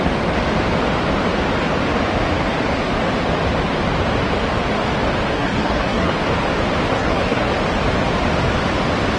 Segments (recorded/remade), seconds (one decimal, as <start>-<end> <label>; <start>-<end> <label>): 0.0-5.3 recorded; 5.3-6.1 remade; 6.1-6.9 recorded; 6.9-7.5 remade; 7.5-9.2 recorded